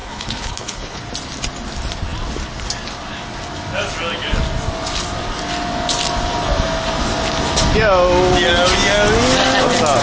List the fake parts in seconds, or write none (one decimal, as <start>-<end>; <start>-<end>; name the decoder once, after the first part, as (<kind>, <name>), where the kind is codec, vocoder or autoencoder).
0.0-1.0 (codec, HILCodec)